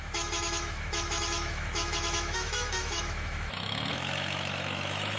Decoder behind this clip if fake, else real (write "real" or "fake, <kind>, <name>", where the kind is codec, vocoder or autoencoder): fake, autoencoder, DAC-VAE